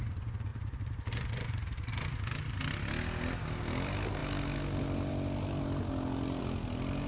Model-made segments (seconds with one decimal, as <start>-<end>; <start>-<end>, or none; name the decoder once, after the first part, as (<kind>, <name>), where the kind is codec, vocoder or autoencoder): none